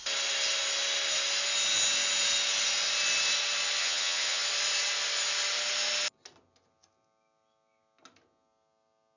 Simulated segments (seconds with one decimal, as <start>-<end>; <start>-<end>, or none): 3.8-4.4